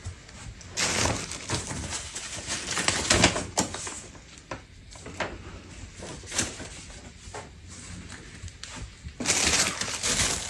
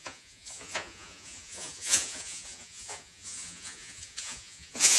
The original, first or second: first